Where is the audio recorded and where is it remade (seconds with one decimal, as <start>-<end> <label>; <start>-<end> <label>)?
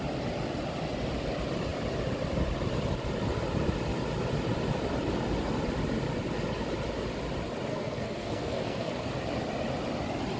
0.0-7.7 recorded; 7.7-9.1 remade; 9.1-10.4 recorded